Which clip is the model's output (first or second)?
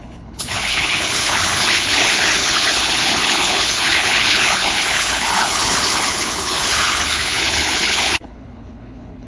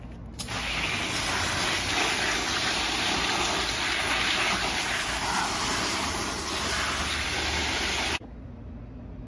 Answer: first